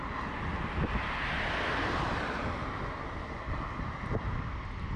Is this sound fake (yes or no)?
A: no